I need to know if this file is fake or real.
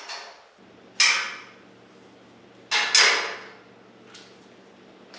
real